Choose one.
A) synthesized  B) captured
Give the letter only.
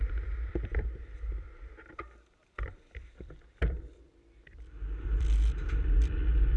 A